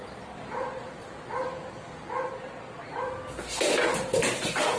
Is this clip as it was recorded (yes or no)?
yes